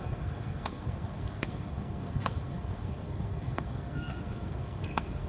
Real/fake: fake